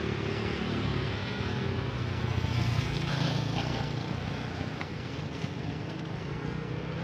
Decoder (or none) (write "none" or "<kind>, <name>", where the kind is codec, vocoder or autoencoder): codec, SNAC